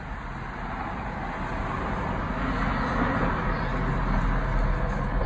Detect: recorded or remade recorded